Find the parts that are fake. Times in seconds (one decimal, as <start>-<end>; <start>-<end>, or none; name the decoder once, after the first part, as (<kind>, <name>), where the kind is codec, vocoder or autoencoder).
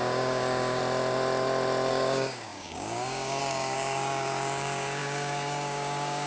0.0-0.8 (codec, DAC); 1.9-6.3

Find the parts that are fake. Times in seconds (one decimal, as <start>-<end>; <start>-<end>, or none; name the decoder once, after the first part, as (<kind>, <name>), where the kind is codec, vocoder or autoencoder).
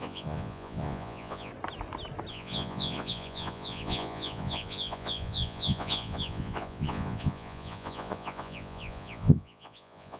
0.0-1.5 (vocoder, Vocos); 2.3-10.2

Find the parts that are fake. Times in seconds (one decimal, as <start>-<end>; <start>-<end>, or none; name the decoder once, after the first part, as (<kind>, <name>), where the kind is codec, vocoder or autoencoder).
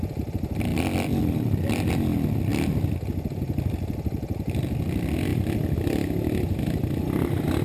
0.7-1.9 (vocoder, BigVGAN v2); 2.5-4.8; 5.3-5.8